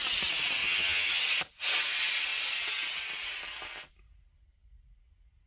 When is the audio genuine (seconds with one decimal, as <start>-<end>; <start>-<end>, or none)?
0.0-0.6; 1.2-5.5